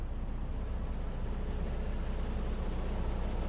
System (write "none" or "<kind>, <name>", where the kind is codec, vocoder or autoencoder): none